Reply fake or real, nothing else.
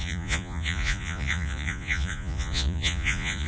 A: fake